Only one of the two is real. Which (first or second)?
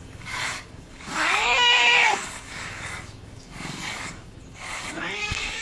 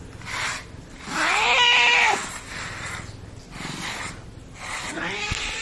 second